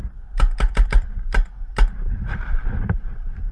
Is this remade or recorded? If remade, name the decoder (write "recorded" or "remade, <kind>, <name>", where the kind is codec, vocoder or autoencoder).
remade, vocoder, BigVGAN v2